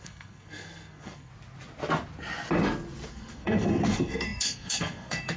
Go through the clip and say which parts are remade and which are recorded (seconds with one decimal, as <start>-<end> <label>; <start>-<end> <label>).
0.0-1.3 remade; 1.3-3.1 recorded; 3.1-5.4 remade